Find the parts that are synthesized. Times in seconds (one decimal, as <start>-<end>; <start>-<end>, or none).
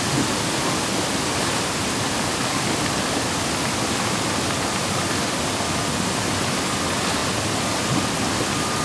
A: 0.9-2.2